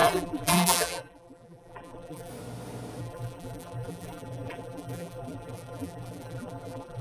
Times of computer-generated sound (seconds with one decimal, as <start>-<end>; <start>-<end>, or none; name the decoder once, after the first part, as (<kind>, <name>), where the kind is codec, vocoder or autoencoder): 0.0-2.3 (vocoder, BigVGAN v2); 3.0-7.0